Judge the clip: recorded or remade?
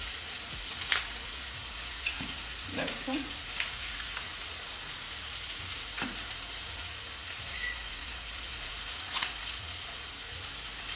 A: remade